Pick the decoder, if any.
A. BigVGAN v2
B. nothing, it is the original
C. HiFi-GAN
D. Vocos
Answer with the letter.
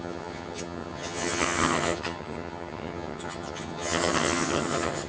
C